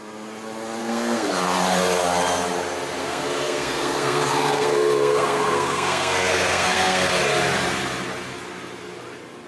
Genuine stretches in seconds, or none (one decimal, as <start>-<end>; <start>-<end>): 0.0-0.8; 1.3-3.0; 7.1-9.5